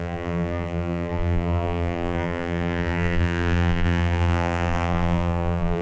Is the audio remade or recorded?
remade